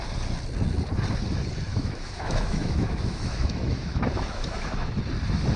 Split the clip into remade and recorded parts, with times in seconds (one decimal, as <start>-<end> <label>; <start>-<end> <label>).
0.0-1.7 recorded; 1.7-4.9 remade; 4.9-5.6 recorded